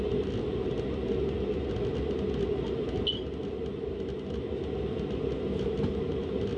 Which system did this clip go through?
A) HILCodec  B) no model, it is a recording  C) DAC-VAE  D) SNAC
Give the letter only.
B